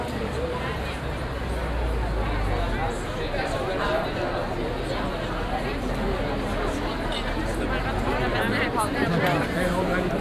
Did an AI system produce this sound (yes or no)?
no